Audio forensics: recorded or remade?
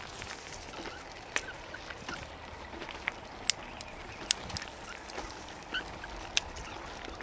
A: recorded